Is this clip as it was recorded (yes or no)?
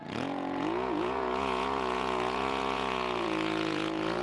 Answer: no